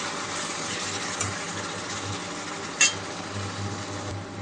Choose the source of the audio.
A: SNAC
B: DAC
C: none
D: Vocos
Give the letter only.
C